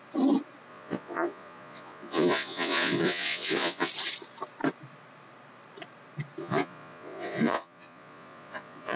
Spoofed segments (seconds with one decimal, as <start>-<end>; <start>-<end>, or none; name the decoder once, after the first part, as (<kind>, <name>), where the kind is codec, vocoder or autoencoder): 0.7-3.9 (vocoder, Vocos); 6.4-9.0